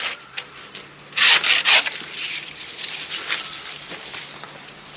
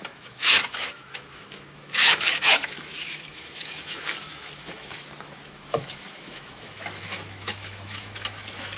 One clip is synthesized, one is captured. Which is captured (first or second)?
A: first